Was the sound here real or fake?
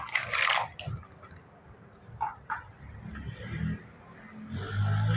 real